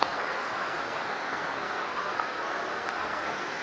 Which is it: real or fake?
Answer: fake